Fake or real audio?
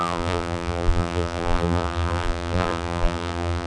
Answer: fake